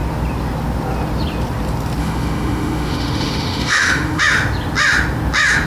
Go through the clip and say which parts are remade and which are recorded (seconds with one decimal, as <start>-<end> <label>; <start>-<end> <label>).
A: 0.0-2.0 recorded; 2.0-4.2 remade; 4.2-5.7 recorded